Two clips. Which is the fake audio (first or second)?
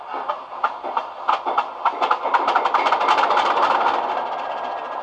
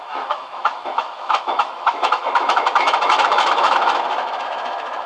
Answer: second